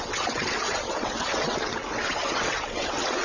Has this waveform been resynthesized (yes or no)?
yes